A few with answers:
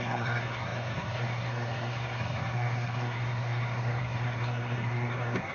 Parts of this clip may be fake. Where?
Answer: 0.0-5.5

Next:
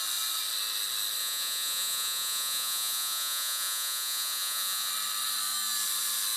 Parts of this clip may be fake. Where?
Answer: 1.2-4.9

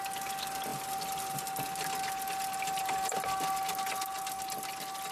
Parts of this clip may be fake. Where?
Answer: none